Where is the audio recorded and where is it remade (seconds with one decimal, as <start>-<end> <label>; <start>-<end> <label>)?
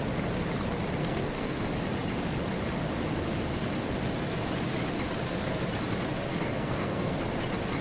0.0-1.0 recorded; 1.0-1.6 remade; 1.6-6.3 recorded; 6.3-7.2 remade; 7.2-7.8 recorded